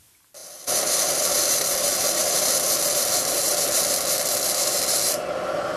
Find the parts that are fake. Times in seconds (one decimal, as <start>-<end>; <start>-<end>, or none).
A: none